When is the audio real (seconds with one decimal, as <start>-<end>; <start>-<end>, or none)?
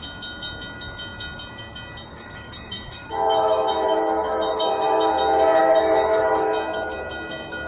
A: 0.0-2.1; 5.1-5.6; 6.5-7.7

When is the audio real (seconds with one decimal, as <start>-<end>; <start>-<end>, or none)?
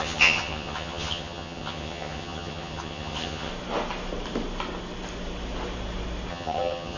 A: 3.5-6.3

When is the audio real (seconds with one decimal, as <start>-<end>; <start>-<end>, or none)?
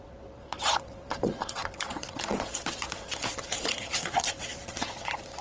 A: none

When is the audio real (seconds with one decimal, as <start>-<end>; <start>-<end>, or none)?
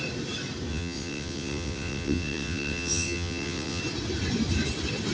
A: 0.0-0.7; 3.8-5.1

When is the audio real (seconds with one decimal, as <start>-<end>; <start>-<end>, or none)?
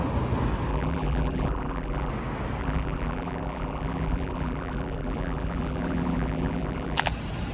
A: 0.0-0.7; 2.1-2.6; 7.1-7.5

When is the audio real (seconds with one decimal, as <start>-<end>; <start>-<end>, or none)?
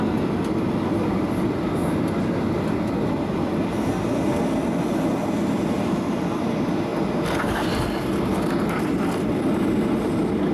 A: 0.0-10.5